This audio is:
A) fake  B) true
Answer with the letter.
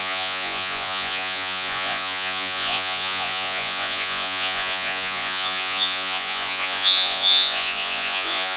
A